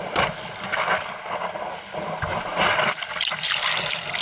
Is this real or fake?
real